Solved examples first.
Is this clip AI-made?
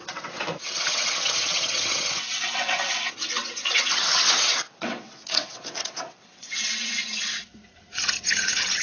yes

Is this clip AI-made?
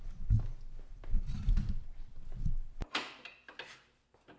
no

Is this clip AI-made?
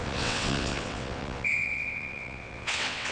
yes